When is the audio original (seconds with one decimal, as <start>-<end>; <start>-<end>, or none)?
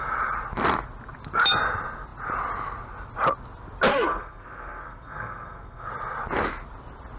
0.0-3.9; 5.9-7.2